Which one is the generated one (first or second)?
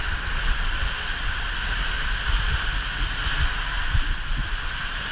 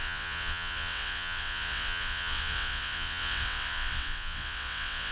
second